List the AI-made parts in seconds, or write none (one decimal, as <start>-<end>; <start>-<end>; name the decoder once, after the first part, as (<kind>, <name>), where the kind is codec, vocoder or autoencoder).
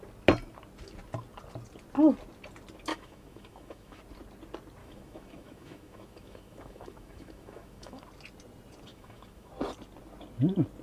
2.9-4.0 (autoencoder, DAC-VAE); 4.8-8.0; 8.9-9.5